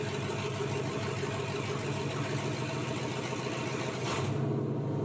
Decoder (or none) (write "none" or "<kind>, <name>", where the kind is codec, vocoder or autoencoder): none